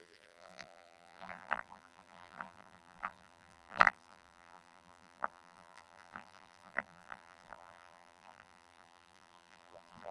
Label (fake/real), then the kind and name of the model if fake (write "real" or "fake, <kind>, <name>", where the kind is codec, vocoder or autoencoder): fake, vocoder, BigVGAN v2